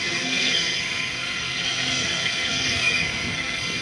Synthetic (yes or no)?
yes